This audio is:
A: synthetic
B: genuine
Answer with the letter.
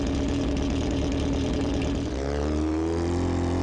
B